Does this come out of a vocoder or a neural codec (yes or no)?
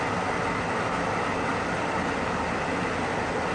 no